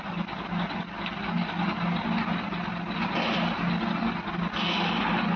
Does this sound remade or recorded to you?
recorded